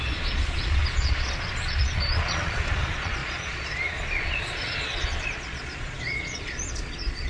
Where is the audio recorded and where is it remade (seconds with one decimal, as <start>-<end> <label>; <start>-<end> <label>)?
0.0-7.3 remade